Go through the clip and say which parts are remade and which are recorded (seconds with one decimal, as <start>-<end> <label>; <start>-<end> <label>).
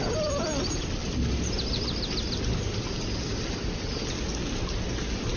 0.0-5.4 recorded